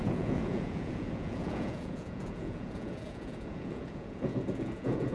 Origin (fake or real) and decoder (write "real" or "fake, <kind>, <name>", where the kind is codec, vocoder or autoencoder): fake, vocoder, Vocos